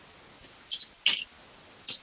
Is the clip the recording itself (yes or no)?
yes